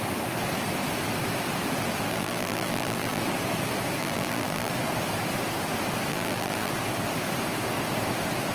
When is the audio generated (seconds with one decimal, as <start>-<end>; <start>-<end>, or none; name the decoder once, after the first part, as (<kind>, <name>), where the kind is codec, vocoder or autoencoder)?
2.1-3.2 (vocoder, BigVGAN v2); 4.0-4.7; 6.1-6.7